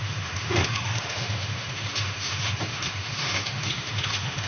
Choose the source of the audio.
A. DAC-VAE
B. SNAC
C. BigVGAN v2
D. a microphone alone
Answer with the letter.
A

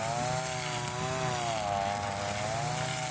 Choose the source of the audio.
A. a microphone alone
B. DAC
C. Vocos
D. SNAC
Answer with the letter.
A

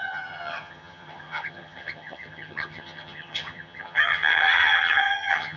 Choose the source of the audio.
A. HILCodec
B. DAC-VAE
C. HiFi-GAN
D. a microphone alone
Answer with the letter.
C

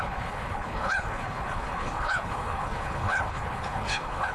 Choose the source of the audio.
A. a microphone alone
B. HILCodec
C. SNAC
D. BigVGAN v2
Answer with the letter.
B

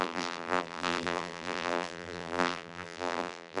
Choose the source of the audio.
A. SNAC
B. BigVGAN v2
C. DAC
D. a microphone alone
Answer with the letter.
B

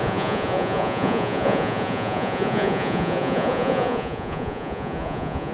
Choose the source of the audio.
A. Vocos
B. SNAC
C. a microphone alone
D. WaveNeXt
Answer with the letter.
A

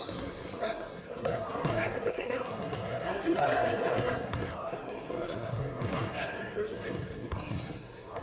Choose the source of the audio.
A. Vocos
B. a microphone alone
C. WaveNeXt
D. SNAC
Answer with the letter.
D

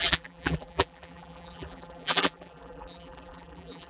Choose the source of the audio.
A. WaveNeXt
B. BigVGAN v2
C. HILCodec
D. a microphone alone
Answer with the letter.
B